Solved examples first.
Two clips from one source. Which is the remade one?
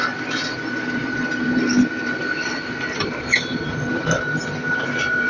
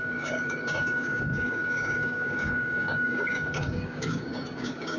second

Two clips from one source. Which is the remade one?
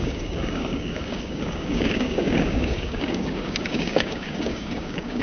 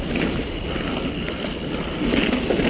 first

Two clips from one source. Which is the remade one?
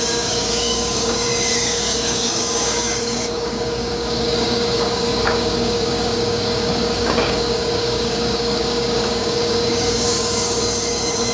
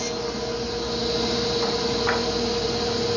first